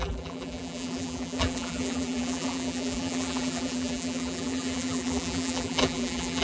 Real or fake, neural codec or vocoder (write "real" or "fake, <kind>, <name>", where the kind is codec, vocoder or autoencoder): fake, vocoder, BigVGAN v2